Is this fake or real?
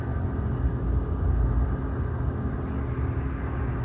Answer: real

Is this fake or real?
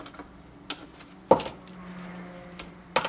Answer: real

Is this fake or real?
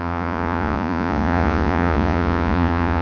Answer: fake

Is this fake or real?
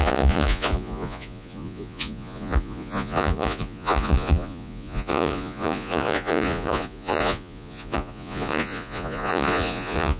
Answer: fake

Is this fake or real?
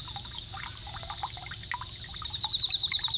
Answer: real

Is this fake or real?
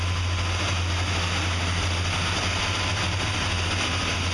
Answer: real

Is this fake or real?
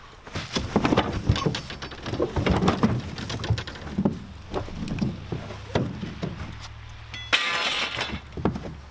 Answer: real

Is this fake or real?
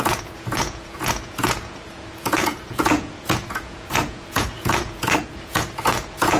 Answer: fake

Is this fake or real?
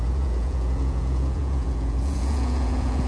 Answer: fake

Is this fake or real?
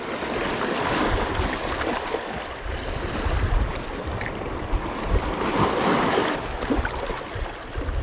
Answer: real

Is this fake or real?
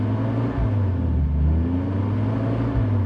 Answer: real